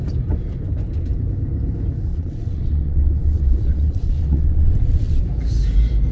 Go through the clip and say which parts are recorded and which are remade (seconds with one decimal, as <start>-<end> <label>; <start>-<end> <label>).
0.0-2.1 recorded; 2.1-5.2 remade; 5.2-6.1 recorded